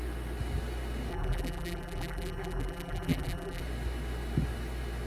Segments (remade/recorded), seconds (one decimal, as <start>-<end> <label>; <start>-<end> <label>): 0.0-1.1 recorded; 1.1-3.6 remade; 3.6-5.1 recorded